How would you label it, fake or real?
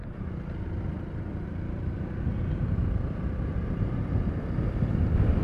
fake